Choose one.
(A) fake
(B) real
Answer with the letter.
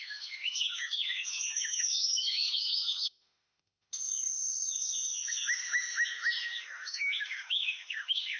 A